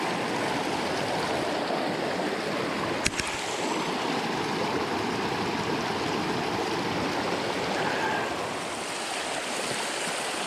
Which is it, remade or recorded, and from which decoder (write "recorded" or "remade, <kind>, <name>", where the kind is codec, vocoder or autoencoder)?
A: recorded